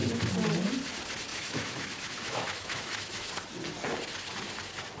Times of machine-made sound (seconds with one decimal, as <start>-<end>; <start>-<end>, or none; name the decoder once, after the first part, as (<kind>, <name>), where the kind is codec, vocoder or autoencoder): 1.3-3.3 (autoencoder, DAC-VAE)